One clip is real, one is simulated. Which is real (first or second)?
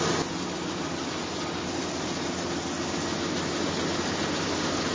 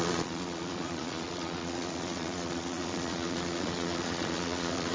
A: first